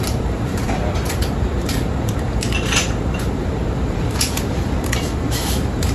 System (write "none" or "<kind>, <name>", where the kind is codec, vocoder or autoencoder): vocoder, BigVGAN v2